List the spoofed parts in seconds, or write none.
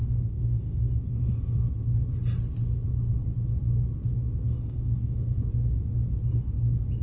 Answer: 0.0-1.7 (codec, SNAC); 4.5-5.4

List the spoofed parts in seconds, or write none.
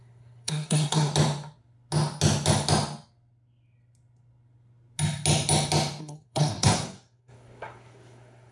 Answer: 0.0-1.1 (codec, SNAC); 6.0-8.5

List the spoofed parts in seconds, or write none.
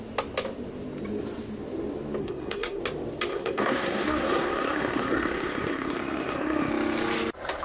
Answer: 2.2-2.8 (codec, SNAC); 3.3-6.7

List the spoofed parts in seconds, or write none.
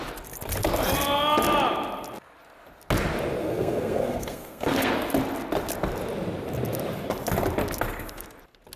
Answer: 3.4-4.9 (codec, SNAC)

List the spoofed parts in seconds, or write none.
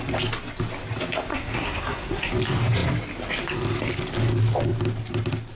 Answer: 1.3-2.3 (codec, SNAC)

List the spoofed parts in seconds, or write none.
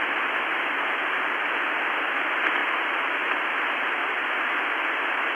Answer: none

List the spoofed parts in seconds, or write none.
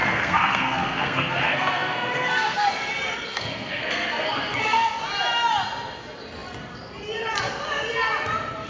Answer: 0.0-2.9 (codec, SNAC); 3.3-5.0